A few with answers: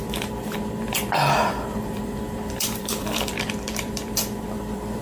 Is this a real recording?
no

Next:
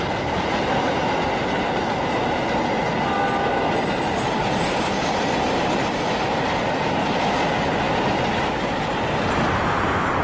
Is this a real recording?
yes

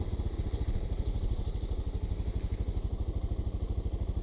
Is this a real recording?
yes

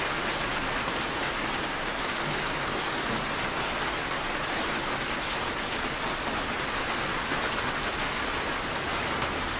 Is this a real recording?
yes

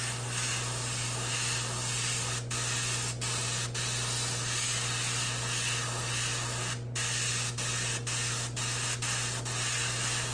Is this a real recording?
yes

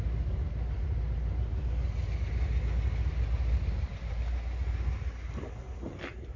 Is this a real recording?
yes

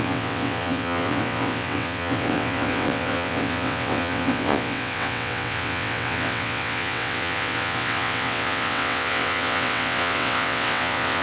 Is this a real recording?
no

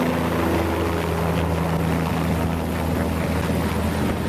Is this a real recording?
yes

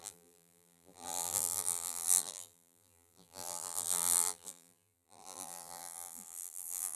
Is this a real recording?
no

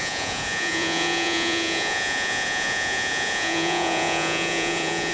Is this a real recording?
no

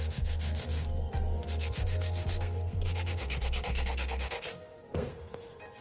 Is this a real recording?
no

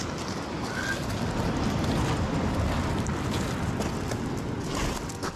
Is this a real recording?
yes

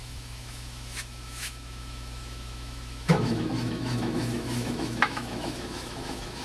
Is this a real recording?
no